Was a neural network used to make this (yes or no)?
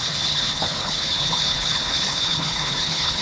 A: yes